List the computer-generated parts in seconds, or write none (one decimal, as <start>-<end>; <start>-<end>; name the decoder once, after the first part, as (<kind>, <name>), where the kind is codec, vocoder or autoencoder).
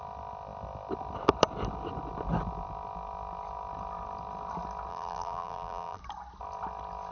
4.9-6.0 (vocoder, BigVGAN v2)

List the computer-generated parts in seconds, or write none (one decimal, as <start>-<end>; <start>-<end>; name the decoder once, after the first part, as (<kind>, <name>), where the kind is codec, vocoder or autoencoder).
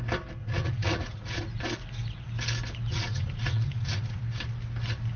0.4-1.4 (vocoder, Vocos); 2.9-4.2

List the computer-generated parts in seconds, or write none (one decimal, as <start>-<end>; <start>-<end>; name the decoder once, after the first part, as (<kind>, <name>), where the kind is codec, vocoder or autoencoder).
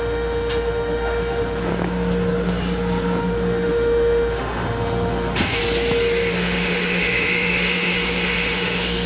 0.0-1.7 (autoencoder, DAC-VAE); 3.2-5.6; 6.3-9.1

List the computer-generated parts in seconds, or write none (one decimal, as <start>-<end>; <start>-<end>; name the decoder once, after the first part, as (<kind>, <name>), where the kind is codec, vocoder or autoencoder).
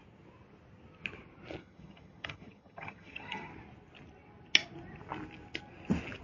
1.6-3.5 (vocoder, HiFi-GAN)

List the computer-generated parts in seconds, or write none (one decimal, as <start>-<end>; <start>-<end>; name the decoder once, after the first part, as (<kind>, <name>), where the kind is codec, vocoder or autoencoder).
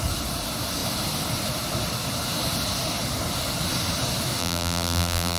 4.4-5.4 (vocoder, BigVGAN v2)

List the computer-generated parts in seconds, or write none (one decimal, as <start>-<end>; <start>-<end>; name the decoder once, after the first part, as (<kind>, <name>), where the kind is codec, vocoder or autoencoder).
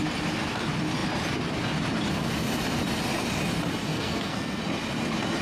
3.9-4.6 (codec, SNAC)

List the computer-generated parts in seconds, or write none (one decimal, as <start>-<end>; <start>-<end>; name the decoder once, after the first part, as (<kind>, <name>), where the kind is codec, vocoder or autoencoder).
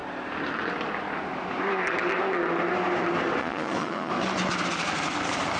3.4-4.1 (vocoder, Vocos)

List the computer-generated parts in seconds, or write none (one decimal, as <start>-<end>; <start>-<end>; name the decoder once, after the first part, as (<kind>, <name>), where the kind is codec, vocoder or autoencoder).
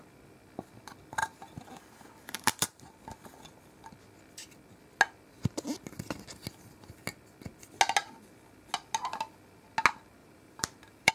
1.2-2.8 (vocoder, BigVGAN v2); 10.2-11.1